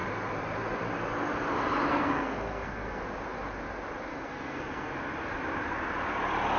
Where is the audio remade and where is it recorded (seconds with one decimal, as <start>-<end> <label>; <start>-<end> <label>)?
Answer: 0.0-1.9 recorded; 1.9-3.0 remade; 3.0-4.1 recorded; 4.1-4.9 remade; 4.9-6.6 recorded